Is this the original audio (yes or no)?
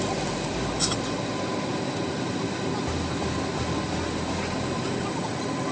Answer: yes